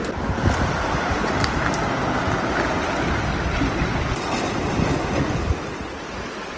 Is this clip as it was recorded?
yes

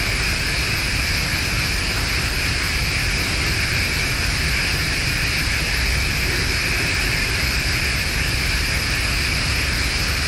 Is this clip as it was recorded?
yes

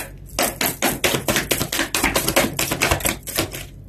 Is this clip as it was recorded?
yes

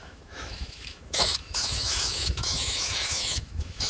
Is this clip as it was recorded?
no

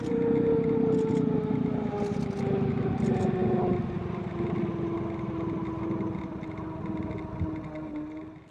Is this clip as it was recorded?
yes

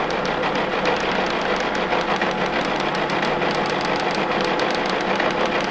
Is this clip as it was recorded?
yes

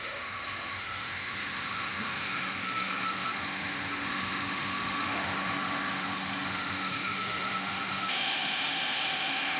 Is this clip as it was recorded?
no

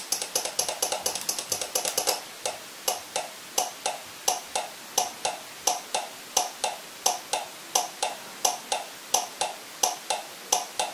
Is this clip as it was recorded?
yes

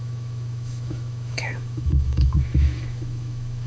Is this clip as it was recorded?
no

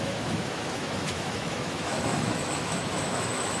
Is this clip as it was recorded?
no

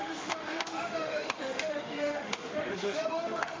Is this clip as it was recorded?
no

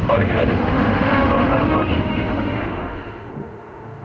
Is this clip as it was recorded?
no